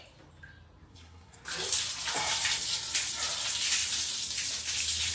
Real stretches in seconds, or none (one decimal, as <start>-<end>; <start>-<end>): 0.0-0.9; 1.4-5.1